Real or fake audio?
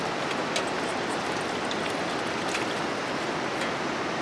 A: real